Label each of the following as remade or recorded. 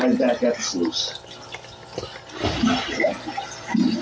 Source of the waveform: recorded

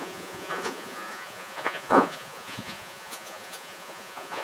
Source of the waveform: remade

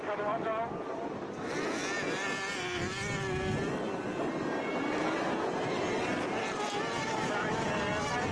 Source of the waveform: recorded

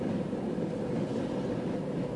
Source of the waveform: recorded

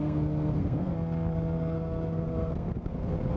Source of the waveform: remade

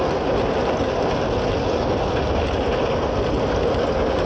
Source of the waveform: recorded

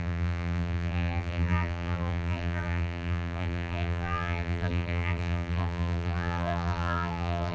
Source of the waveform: remade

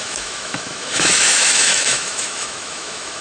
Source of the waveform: remade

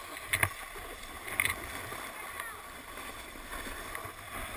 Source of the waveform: recorded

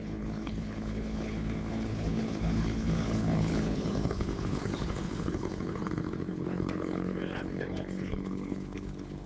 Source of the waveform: remade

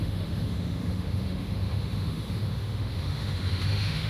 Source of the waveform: remade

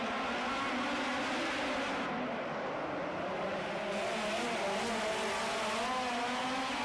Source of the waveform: recorded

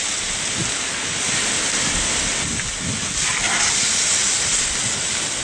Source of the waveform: recorded